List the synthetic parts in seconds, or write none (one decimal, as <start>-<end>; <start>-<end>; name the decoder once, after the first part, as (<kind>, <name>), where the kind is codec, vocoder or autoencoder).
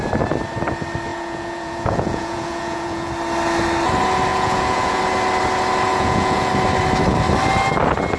1.1-3.1 (vocoder, Vocos); 4.3-5.0; 5.9-6.5